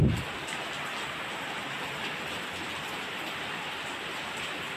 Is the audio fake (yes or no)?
no